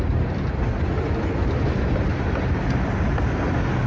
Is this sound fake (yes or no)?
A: no